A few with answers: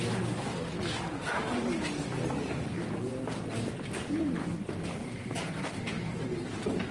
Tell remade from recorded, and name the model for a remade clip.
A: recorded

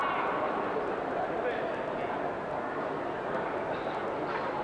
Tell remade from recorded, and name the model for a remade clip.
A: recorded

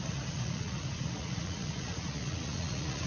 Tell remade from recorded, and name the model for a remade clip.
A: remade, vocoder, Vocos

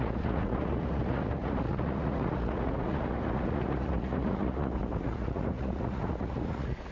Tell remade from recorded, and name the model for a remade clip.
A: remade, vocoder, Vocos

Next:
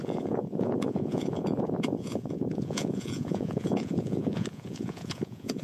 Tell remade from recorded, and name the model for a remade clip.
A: remade, vocoder, Vocos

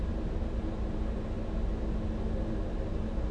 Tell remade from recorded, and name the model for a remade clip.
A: recorded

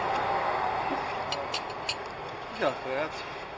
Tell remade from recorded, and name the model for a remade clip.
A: recorded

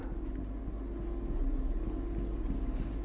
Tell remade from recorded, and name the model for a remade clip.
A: recorded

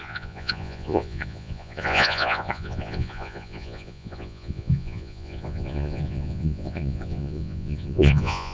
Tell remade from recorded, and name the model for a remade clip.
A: remade, vocoder, Vocos